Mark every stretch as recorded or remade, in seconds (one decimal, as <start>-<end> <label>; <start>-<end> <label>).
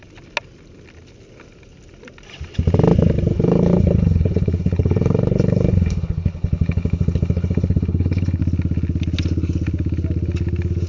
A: 0.0-3.3 recorded; 3.3-8.4 remade; 8.4-10.9 recorded